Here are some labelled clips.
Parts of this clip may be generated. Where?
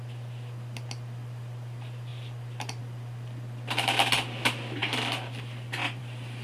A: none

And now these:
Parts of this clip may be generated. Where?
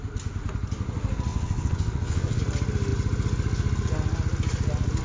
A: 1.3-2.4 (vocoder, WaveNeXt)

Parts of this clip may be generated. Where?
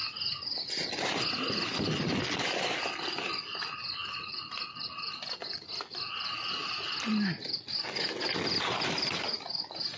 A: none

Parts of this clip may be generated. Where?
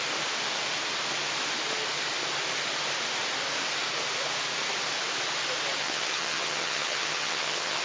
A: 5.8-7.8 (vocoder, HiFi-GAN)